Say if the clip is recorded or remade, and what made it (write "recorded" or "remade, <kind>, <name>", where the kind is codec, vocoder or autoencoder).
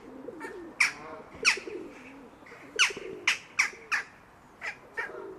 recorded